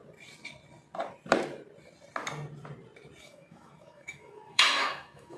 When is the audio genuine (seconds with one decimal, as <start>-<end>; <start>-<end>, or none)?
0.0-3.2